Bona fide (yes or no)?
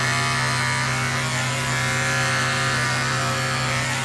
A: yes